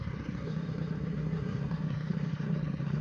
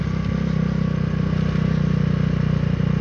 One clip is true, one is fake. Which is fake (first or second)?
first